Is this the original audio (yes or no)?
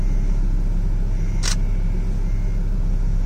yes